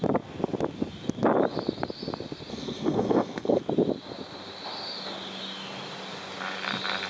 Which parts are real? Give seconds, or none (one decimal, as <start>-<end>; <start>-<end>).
0.0-2.5; 3.6-7.1